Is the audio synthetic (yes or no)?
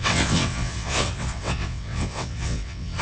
yes